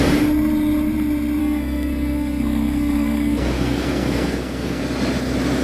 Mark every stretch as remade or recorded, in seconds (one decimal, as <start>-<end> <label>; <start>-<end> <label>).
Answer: 0.0-1.4 recorded; 1.4-4.8 remade; 4.8-5.6 recorded